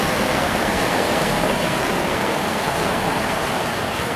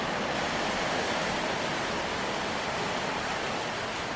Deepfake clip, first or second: first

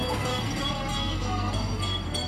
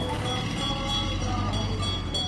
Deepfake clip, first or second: first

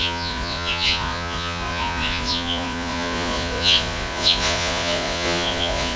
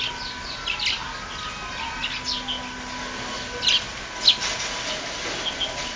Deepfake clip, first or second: first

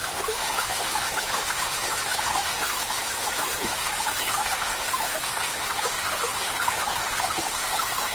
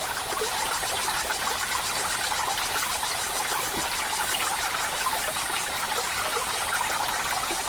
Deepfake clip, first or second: first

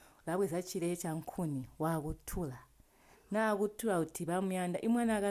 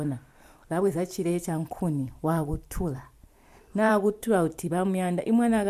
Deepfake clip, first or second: second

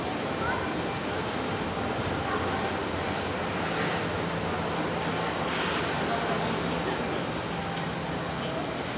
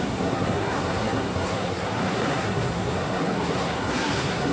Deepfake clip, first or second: second